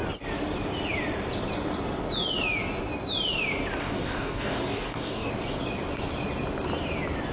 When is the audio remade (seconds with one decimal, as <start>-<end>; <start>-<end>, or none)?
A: 3.8-5.3